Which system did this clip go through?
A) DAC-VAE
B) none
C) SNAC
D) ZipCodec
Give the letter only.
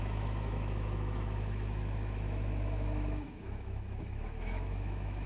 A